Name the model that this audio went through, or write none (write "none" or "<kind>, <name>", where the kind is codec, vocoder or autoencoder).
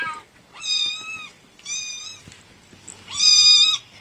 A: none